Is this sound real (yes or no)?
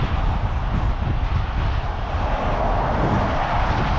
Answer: yes